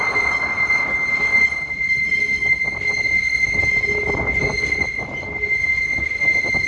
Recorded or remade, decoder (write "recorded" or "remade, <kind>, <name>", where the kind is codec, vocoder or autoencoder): recorded